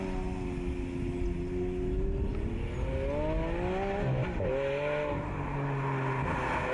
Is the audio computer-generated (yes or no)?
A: no